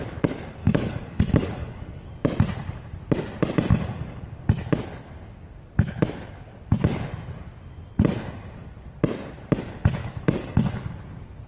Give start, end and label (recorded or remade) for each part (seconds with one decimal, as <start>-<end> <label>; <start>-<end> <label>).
0.0-0.6 recorded; 0.6-2.1 remade; 2.1-3.7 recorded; 3.7-4.3 remade; 4.3-10.0 recorded; 10.0-10.9 remade; 10.9-11.5 recorded